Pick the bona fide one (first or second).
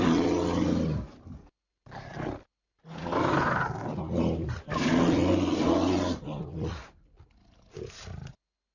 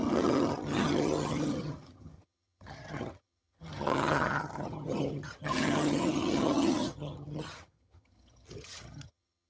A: first